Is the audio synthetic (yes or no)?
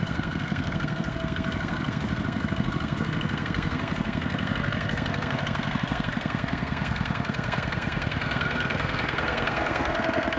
yes